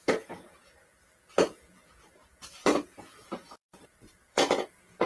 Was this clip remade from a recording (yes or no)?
yes